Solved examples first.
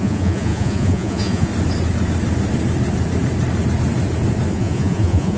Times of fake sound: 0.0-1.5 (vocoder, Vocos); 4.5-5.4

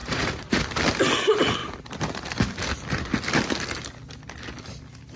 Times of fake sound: 0.0-0.6 (vocoder, Vocos)

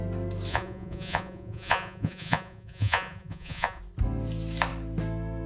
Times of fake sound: 0.5-3.8 (vocoder, Vocos)

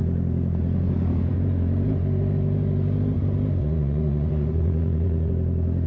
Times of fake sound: 3.6-5.3 (vocoder, Vocos)

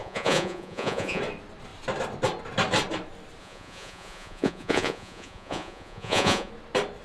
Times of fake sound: 0.0-1.2 (vocoder, Vocos); 3.4-6.5